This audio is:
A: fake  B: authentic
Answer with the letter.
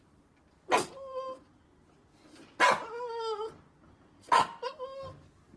B